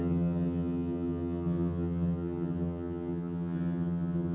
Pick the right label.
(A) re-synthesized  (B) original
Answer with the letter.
A